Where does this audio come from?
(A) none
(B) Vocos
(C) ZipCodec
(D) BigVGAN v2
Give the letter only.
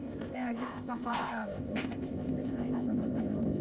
C